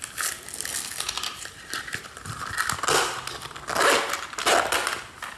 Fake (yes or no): no